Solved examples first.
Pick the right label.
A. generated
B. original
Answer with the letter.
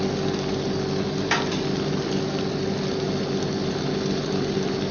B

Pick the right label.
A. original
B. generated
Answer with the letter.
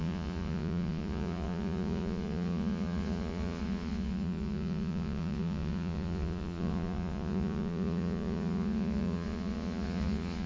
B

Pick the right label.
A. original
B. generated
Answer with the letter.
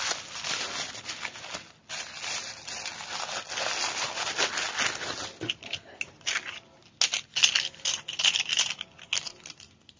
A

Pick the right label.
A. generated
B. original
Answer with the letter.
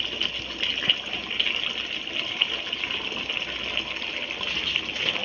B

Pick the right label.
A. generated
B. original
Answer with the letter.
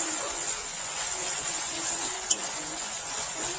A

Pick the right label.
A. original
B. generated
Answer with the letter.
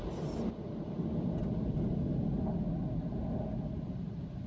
A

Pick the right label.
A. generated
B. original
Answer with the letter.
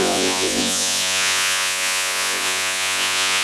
A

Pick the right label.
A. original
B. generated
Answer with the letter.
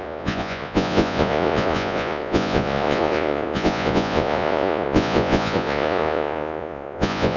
B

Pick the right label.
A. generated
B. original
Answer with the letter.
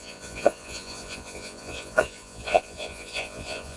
A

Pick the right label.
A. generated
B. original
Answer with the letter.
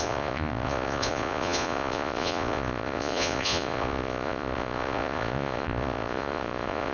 A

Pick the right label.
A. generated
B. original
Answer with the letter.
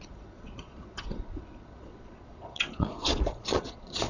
A